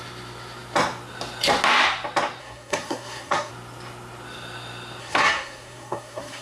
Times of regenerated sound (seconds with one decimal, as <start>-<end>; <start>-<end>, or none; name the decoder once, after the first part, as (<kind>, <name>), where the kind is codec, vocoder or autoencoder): 2.4-3.5 (codec, SNAC); 5.0-6.4